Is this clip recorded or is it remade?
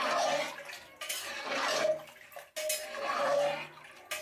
recorded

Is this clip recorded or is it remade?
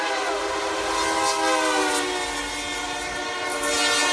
recorded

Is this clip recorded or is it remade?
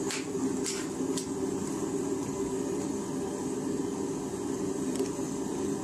recorded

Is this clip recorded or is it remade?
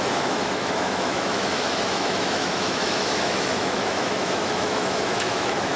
remade